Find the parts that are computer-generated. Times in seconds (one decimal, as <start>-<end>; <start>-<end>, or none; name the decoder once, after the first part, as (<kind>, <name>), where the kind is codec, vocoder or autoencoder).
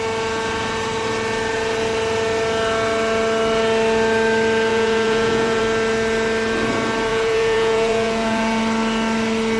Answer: 4.7-5.6 (vocoder, Vocos); 7.1-8.6